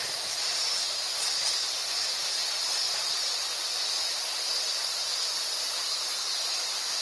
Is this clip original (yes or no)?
yes